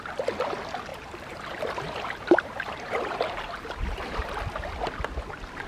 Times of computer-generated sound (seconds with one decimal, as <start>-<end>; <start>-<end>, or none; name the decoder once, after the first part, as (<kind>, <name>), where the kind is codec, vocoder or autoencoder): 0.9-4.3 (vocoder, BigVGAN v2)